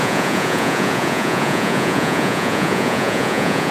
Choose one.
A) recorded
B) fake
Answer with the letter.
B